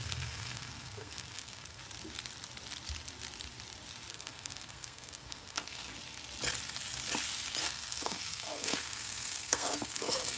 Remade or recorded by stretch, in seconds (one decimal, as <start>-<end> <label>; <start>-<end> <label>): 0.0-1.8 remade; 1.8-4.1 recorded; 4.1-5.9 remade; 5.9-7.6 recorded; 7.6-10.4 remade